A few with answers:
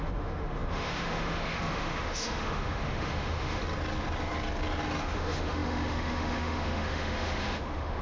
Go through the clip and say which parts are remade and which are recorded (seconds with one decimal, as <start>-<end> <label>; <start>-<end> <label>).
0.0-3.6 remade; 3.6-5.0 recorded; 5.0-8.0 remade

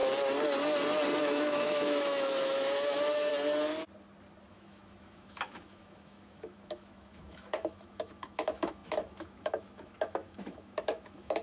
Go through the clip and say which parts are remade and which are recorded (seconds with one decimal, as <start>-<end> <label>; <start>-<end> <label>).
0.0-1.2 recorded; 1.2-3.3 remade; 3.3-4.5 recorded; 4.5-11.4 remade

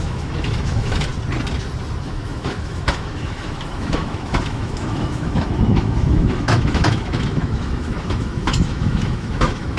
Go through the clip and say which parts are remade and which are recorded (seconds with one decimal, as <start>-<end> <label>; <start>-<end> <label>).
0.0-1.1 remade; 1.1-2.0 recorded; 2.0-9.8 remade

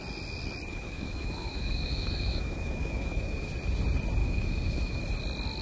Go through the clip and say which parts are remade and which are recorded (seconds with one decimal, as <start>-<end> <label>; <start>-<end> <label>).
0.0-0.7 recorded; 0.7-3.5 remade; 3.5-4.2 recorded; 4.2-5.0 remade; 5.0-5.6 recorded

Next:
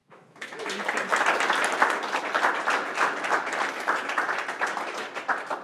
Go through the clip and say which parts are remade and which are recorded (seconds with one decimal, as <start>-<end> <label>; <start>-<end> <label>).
0.0-0.7 remade; 0.7-5.6 recorded

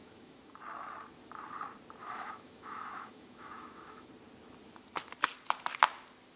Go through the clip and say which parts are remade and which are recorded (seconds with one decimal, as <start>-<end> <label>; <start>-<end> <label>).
0.0-0.6 remade; 0.6-2.0 recorded; 2.0-4.1 remade; 4.1-6.4 recorded